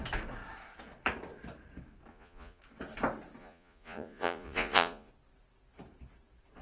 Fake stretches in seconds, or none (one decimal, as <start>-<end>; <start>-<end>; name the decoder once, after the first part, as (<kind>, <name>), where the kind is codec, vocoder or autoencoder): 2.1-2.6 (vocoder, Vocos); 3.4-5.1